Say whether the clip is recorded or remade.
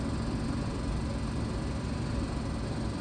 recorded